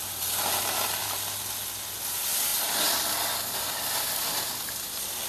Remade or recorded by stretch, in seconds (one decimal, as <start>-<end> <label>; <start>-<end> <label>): 0.0-5.3 recorded